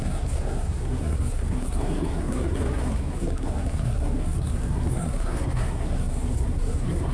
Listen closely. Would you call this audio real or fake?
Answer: fake